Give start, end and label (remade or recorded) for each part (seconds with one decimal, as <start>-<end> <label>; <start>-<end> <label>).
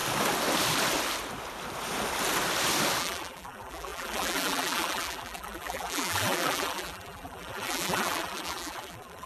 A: 0.0-3.0 recorded; 3.0-9.3 remade